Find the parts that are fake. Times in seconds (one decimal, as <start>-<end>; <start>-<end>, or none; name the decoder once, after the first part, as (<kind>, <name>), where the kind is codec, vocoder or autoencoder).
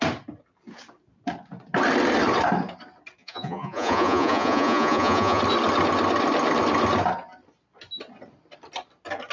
3.2-5.4 (vocoder, Vocos)